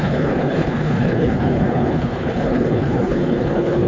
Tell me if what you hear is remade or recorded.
remade